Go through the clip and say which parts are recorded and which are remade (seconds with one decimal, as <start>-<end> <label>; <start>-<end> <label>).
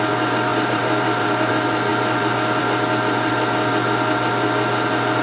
0.0-0.5 recorded; 0.5-1.5 remade; 1.5-5.2 recorded